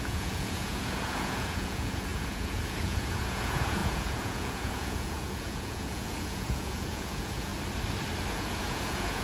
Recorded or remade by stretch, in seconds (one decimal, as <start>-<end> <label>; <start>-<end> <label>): 0.0-7.5 remade; 7.5-8.3 recorded; 8.3-9.2 remade